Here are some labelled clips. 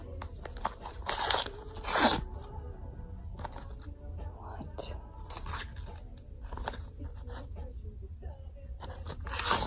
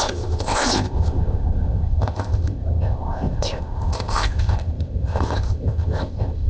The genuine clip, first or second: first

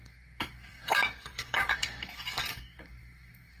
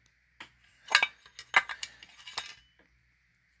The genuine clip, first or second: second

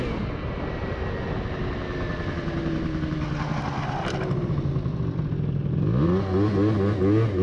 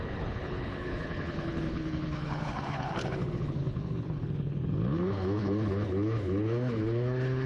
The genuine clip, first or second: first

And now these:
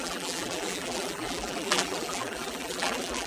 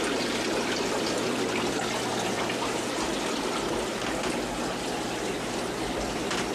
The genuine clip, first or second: second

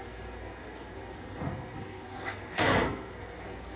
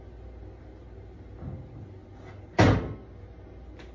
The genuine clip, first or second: second